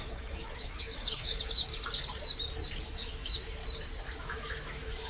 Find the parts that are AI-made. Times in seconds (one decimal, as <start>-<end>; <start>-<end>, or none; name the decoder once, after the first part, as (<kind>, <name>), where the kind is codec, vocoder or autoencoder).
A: 0.0-1.7 (autoencoder, DAC-VAE); 2.8-3.6; 4.2-5.1